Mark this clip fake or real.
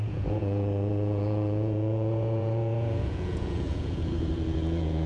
fake